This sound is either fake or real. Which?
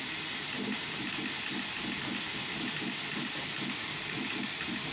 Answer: fake